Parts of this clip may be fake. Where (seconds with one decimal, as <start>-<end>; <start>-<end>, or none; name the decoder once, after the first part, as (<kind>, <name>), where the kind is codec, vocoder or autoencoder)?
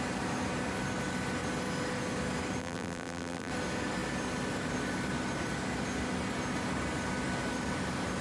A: 2.6-3.5 (vocoder, BigVGAN v2)